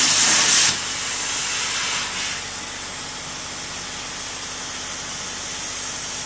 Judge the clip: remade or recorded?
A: recorded